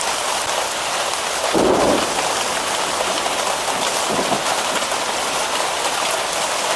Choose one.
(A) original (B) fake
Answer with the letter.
A